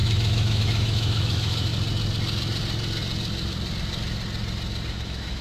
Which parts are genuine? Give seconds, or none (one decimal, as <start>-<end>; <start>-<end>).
1.7-4.9